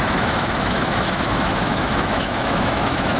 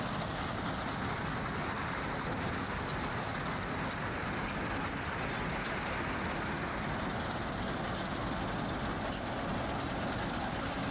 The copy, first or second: first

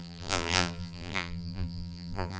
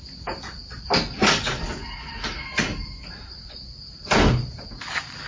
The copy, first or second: first